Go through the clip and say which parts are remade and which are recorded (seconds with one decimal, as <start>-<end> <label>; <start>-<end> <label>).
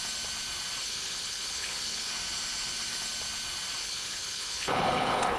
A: 0.0-0.8 recorded; 0.8-2.1 remade; 2.1-3.8 recorded; 3.8-5.4 remade